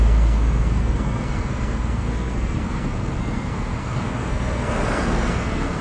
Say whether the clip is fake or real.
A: fake